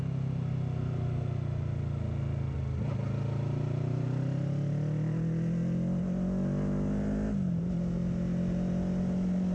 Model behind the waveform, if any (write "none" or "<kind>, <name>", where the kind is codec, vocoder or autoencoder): none